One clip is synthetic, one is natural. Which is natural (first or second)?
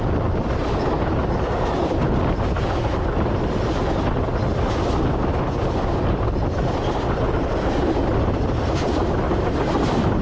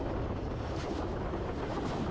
second